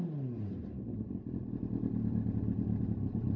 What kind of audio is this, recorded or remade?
recorded